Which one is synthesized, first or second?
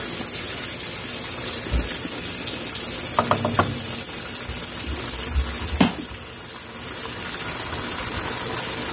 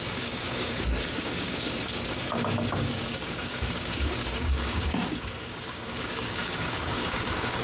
second